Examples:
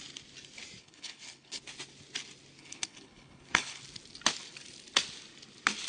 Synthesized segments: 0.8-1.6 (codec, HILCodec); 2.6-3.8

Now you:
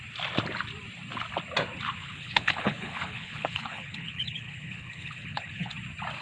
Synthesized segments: 2.0-5.7 (codec, HILCodec)

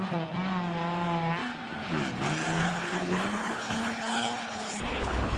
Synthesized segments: 2.6-5.4 (codec, HILCodec)

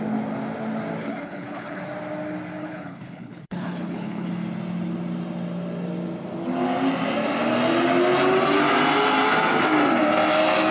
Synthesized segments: 1.0-1.8 (codec, HILCodec); 2.6-4.3

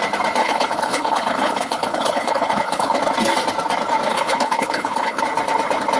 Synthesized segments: 0.4-3.0 (codec, HILCodec); 4.1-5.2

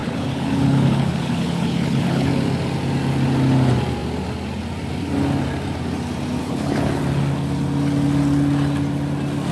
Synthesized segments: 0.0-2.3 (codec, HILCodec); 6.4-7.0